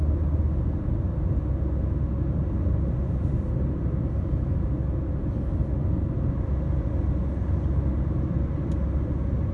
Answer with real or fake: real